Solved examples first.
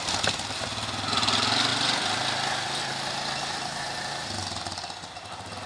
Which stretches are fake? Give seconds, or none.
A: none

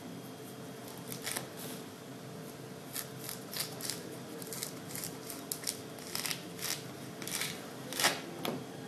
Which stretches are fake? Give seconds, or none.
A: none